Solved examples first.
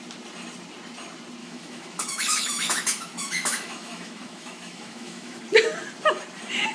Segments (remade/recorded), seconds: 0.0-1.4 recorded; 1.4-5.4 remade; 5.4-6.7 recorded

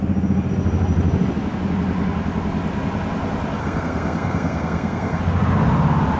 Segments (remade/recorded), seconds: 0.0-3.6 recorded; 3.6-5.2 remade; 5.2-6.2 recorded

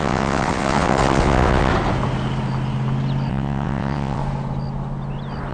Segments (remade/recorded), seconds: 0.0-1.7 remade; 1.7-3.3 recorded; 3.3-4.2 remade; 4.2-5.5 recorded

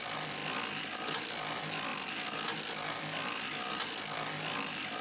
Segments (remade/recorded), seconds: 0.0-5.0 recorded

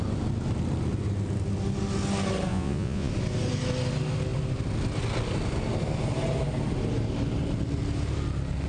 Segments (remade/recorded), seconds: 0.0-2.5 recorded; 2.5-3.1 remade; 3.1-8.7 recorded

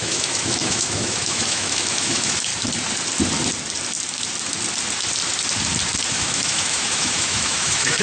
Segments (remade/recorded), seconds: 0.0-2.5 remade; 2.5-6.1 recorded; 6.1-8.0 remade

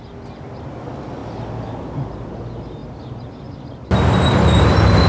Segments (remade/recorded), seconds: 0.0-5.1 recorded